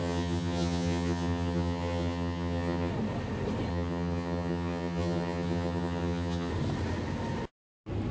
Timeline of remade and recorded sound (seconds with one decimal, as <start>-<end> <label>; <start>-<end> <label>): 0.0-2.9 remade; 2.9-3.7 recorded; 3.7-6.5 remade; 6.5-8.1 recorded